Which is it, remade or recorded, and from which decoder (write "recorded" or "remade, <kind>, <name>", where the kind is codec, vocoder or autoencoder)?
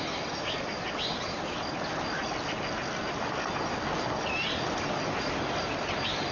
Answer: recorded